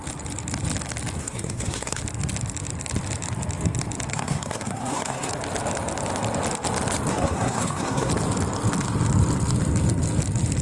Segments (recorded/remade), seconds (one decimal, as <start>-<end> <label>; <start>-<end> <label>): 0.0-1.2 recorded; 1.2-2.0 remade; 2.0-4.1 recorded; 4.1-5.3 remade; 5.3-7.1 recorded; 7.1-8.1 remade; 8.1-10.6 recorded